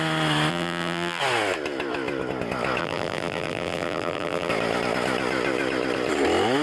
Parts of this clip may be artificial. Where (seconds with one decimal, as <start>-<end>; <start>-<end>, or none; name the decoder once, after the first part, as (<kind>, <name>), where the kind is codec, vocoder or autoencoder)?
0.5-1.2 (vocoder, BigVGAN v2); 2.8-4.5